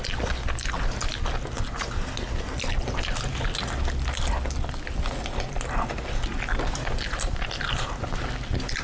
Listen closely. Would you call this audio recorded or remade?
recorded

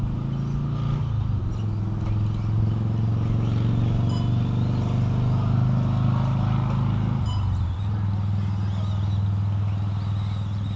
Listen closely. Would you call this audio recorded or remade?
recorded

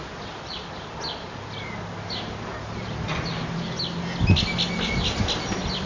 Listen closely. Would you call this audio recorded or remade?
recorded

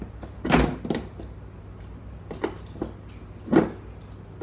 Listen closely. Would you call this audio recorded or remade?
recorded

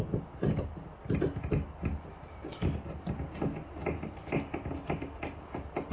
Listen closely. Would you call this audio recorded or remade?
recorded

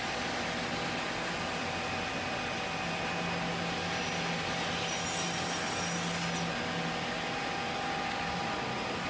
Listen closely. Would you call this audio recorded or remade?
recorded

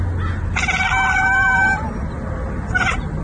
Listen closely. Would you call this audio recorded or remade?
recorded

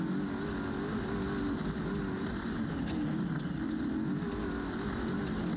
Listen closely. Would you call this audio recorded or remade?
recorded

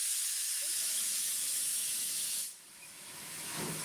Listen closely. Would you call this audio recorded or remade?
remade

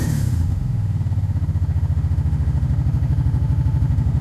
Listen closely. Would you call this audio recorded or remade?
remade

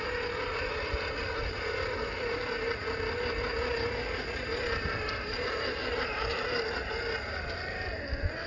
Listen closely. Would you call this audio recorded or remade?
recorded